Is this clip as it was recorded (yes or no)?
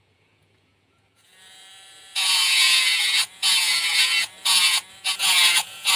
no